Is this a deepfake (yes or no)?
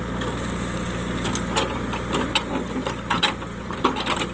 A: no